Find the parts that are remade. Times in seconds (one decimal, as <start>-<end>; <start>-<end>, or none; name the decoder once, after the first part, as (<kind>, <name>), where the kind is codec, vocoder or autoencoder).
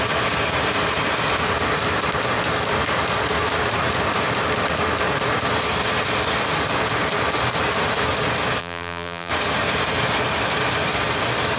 8.6-9.3 (vocoder, BigVGAN v2)